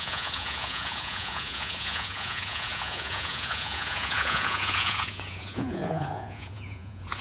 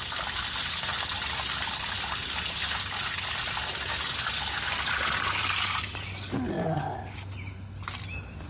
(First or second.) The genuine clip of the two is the second